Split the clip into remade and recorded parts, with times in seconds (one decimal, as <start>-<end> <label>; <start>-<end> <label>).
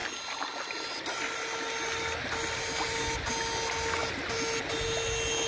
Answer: 0.0-5.5 recorded